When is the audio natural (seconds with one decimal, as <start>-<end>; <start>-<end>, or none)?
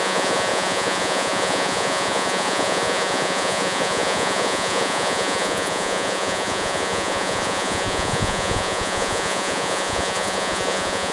none